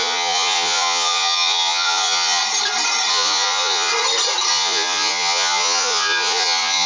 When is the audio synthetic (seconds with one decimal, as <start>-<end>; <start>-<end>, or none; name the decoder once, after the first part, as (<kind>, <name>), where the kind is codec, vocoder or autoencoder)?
0.0-2.4 (vocoder, Vocos); 3.1-3.9; 4.5-6.9